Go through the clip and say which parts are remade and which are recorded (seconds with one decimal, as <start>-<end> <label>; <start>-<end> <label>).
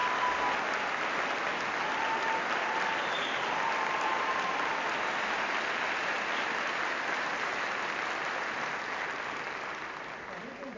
0.0-10.8 recorded